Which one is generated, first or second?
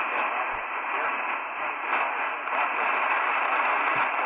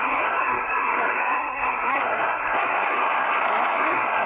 second